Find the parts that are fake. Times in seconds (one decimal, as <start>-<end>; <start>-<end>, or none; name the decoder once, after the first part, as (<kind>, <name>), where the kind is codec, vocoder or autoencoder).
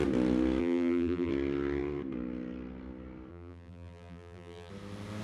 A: 0.6-1.3 (vocoder, BigVGAN v2); 3.3-4.7